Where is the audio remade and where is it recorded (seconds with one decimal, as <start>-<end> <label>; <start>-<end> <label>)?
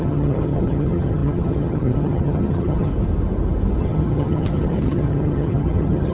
0.0-2.9 remade; 2.9-3.8 recorded; 3.8-6.1 remade